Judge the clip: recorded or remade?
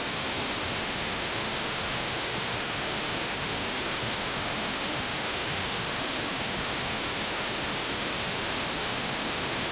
remade